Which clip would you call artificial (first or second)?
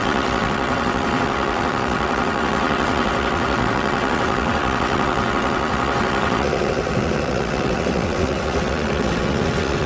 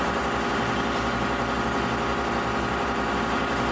first